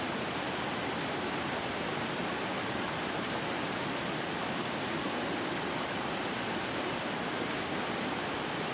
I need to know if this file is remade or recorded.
recorded